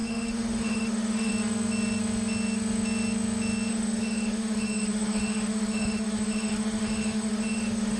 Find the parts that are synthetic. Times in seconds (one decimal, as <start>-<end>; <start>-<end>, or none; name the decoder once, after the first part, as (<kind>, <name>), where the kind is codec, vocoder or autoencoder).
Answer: 0.0-1.3 (autoencoder, DAC-VAE); 3.7-8.0